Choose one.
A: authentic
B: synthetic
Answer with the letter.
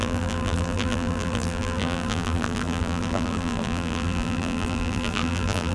B